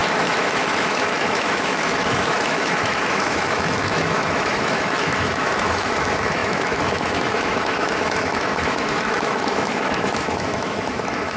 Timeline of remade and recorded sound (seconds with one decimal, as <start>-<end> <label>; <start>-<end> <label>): 0.0-11.4 remade